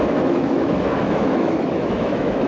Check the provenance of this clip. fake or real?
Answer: fake